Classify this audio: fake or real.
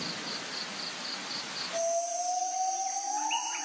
real